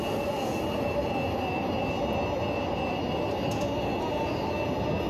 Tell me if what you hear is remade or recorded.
recorded